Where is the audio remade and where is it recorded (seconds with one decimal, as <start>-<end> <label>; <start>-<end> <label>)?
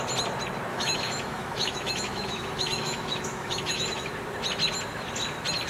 0.0-0.7 recorded; 0.7-4.1 remade; 4.1-5.7 recorded